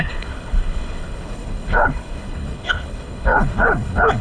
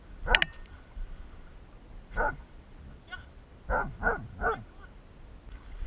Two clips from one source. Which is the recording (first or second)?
second